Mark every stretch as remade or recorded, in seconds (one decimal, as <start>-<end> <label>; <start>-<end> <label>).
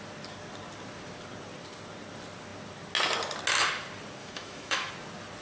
0.0-4.2 recorded; 4.2-4.9 remade; 4.9-5.4 recorded